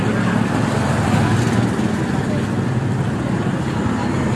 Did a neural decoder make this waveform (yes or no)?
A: no